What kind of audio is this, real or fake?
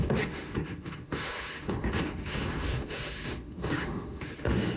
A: fake